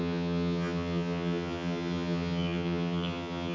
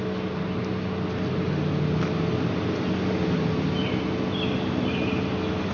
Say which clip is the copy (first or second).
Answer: first